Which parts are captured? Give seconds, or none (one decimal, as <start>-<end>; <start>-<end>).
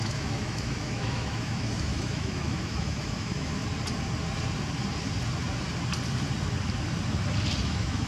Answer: 3.6-7.6